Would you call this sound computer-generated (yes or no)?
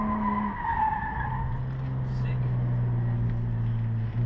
no